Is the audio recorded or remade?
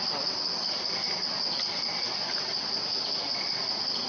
recorded